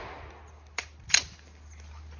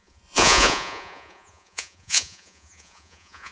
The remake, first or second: second